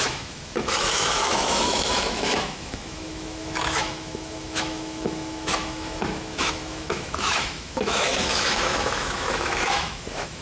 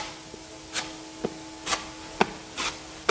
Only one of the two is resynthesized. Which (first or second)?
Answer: first